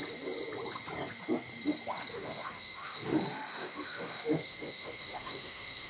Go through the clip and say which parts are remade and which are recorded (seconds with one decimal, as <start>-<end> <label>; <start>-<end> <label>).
0.0-2.1 recorded; 2.1-5.9 remade